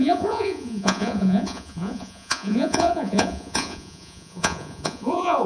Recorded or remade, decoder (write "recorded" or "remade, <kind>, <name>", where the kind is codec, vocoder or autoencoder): remade, vocoder, Vocos